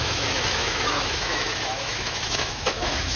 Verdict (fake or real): fake